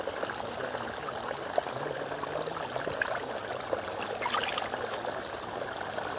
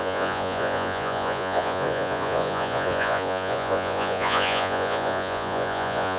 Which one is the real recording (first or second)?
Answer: first